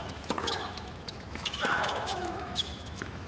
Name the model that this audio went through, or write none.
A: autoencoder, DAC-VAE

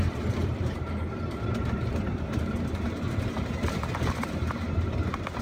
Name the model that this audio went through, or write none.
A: vocoder, BigVGAN v2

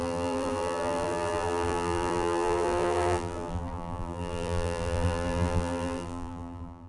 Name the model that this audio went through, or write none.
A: vocoder, BigVGAN v2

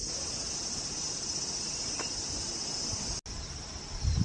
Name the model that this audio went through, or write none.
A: none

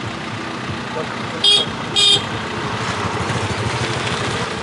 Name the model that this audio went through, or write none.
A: none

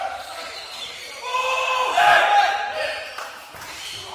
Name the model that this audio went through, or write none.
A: vocoder, BigVGAN v2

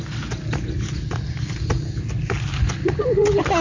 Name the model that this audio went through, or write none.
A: none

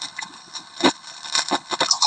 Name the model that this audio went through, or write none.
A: codec, HILCodec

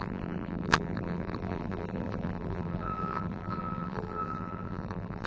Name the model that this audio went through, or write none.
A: vocoder, BigVGAN v2